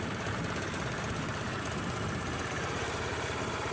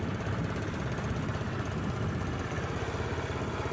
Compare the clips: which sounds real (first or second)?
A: second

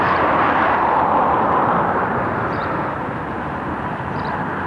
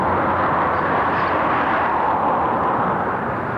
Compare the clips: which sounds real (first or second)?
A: second